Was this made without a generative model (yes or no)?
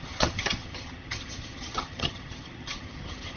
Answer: no